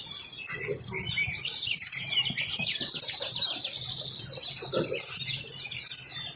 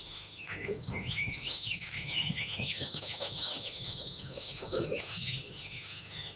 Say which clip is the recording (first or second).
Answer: first